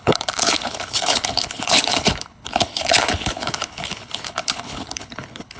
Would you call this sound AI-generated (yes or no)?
yes